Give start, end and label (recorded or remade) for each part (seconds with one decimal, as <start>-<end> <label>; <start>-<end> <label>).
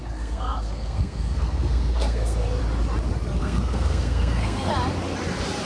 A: 0.0-2.6 remade; 2.6-3.4 recorded; 3.4-4.7 remade; 4.7-5.7 recorded